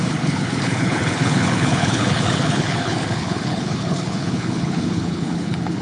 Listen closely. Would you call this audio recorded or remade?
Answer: remade